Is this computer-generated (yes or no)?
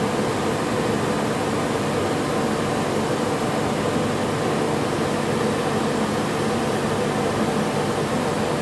no